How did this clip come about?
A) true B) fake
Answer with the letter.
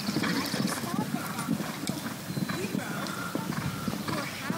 B